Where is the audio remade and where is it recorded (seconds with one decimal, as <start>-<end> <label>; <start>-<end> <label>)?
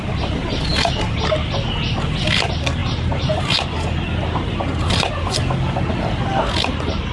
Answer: 0.0-2.8 recorded; 2.8-3.4 remade; 3.4-7.1 recorded